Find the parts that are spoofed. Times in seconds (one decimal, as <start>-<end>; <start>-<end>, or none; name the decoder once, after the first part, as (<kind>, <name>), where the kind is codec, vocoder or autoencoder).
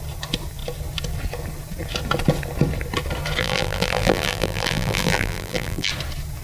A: 3.4-5.9 (vocoder, BigVGAN v2)